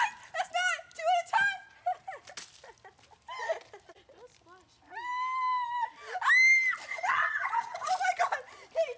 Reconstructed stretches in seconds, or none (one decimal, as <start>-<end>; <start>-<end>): 6.9-7.9